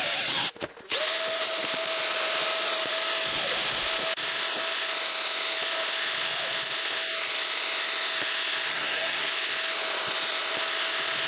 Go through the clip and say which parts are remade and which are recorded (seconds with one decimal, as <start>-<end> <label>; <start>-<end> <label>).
0.0-8.7 recorded; 8.7-9.3 remade; 9.3-11.3 recorded